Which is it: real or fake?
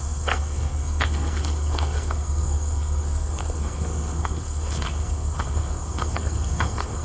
fake